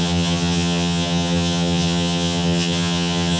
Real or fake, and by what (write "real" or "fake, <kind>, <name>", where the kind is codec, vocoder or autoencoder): fake, vocoder, HiFi-GAN